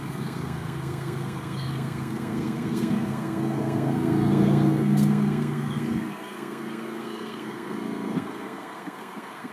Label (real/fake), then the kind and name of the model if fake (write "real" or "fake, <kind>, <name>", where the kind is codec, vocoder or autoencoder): fake, codec, SNAC